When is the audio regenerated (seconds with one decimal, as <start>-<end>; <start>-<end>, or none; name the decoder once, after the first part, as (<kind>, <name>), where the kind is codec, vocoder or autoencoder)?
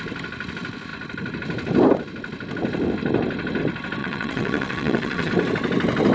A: 4.0-5.3 (vocoder, WaveNeXt)